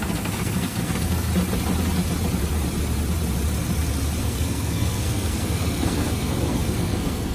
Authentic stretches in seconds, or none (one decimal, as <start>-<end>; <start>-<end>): 1.3-4.2